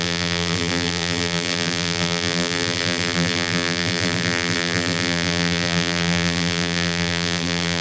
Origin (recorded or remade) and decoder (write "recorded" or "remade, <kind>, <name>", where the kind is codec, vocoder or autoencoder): remade, vocoder, BigVGAN v2